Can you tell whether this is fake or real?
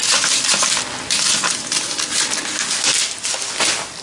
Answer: real